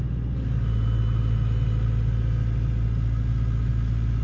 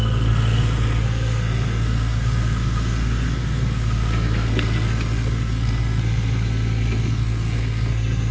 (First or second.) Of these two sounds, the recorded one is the first